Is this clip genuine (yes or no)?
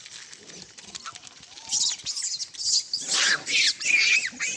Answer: yes